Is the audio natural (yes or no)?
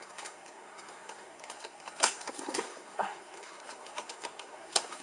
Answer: no